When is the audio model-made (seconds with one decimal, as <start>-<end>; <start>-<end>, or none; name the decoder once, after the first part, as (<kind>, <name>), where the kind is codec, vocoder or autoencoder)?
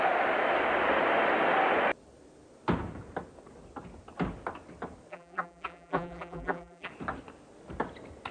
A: 5.1-6.9 (vocoder, BigVGAN v2)